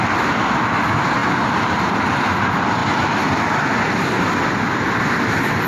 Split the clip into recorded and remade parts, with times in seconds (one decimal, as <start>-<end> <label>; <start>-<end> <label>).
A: 0.0-5.7 recorded